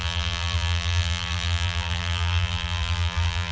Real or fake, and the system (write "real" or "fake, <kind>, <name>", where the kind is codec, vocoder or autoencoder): fake, vocoder, BigVGAN v2